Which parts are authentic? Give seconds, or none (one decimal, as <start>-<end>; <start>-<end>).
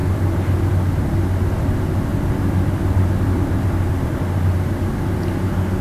0.7-2.1; 4.1-5.8